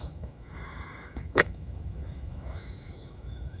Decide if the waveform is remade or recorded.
remade